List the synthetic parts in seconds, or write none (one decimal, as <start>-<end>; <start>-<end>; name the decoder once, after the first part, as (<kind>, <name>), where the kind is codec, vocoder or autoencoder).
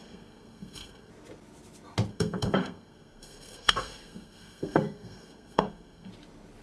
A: 0.0-1.1 (codec, SNAC); 2.1-6.1